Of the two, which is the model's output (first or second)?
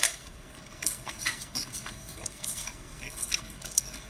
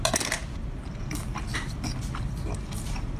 first